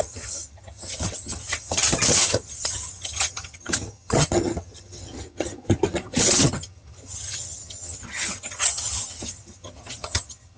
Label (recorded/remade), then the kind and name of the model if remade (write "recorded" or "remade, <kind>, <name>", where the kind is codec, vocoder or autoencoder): remade, vocoder, HiFi-GAN